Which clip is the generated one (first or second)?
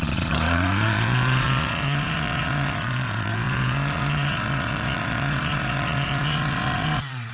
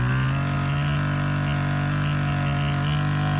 first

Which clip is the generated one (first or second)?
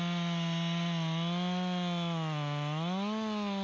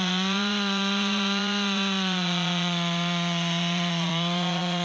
second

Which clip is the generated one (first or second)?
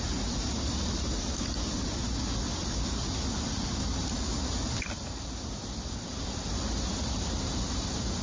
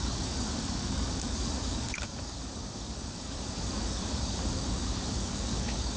second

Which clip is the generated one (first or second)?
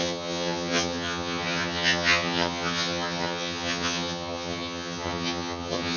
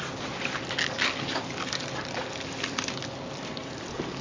first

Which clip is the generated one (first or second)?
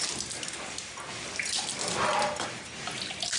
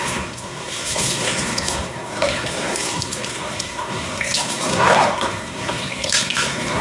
second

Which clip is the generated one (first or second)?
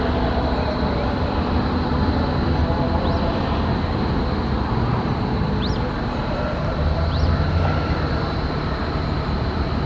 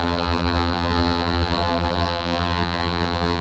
second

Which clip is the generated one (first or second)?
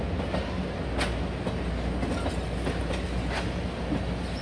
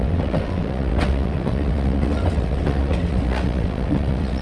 second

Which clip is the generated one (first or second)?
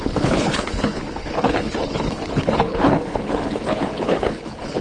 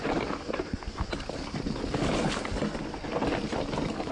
first